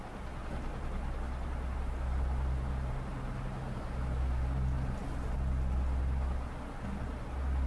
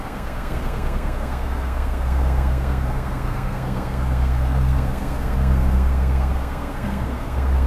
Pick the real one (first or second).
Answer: first